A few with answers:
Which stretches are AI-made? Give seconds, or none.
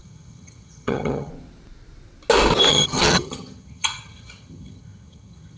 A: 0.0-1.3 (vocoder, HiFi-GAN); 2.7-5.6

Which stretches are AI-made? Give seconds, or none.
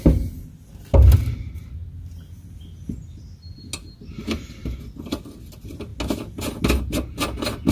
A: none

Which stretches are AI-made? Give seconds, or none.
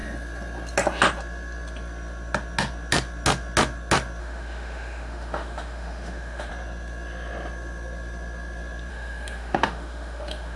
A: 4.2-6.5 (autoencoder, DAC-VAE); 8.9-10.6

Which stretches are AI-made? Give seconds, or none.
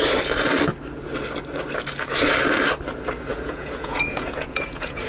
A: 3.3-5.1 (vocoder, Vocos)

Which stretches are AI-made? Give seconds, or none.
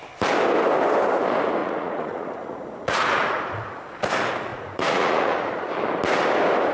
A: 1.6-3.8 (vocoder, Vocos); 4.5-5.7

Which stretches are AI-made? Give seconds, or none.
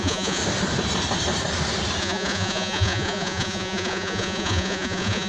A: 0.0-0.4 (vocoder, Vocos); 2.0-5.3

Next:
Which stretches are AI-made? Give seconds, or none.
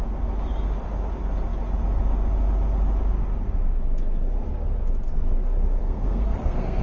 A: 5.8-6.8 (codec, SNAC)